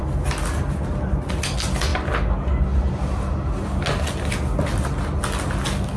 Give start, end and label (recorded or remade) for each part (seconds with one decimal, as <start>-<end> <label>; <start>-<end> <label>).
0.0-6.0 recorded